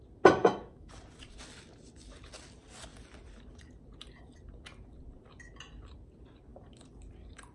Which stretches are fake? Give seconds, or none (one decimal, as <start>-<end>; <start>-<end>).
0.4-0.9